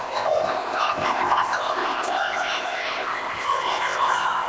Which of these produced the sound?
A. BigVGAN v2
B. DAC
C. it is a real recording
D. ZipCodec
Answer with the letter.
D